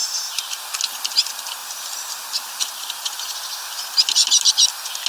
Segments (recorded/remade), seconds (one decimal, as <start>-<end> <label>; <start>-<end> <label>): 0.0-0.6 remade; 0.6-1.6 recorded; 1.6-4.5 remade; 4.5-5.1 recorded